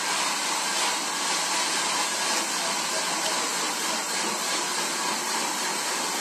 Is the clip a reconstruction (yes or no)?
yes